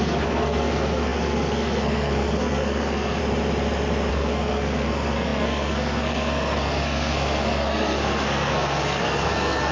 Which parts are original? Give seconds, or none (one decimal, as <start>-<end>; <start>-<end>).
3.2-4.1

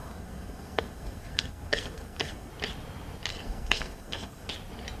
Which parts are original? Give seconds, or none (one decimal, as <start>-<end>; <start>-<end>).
2.5-3.3; 4.5-5.0

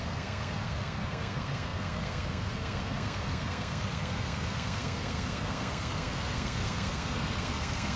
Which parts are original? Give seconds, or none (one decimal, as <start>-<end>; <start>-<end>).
none

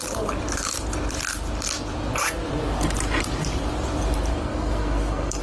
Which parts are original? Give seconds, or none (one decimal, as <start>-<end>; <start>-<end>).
0.0-4.3

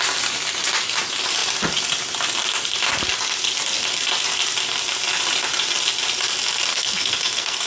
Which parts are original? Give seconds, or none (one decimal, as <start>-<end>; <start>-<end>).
0.0-6.7

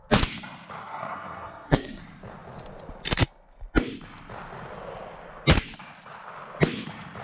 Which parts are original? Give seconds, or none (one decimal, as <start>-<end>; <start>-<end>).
0.0-0.8; 2.0-7.2

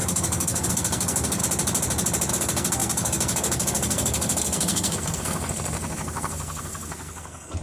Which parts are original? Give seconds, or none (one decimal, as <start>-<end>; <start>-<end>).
1.4-2.3

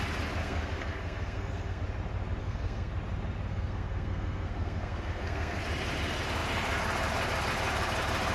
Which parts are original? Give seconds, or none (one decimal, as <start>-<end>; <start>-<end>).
0.0-0.4; 1.8-2.4; 2.9-3.5; 5.6-8.3